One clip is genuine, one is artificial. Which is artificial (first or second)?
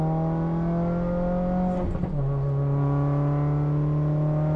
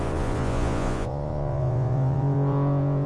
second